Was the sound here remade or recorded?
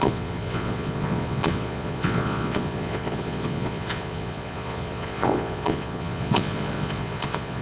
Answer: remade